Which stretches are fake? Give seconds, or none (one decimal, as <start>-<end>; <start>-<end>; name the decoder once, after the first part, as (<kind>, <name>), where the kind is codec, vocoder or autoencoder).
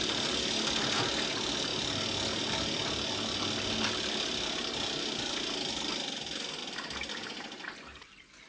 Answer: none